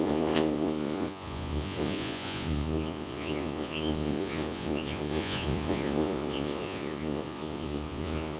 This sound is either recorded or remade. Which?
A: remade